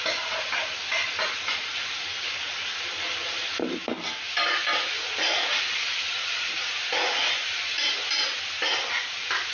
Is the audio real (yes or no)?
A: yes